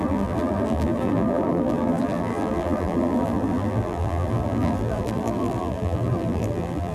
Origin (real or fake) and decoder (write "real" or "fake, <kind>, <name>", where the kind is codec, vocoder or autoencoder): fake, vocoder, BigVGAN v2